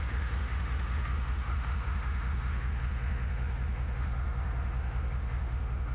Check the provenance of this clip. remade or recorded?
remade